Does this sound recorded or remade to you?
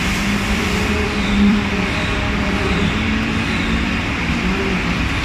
remade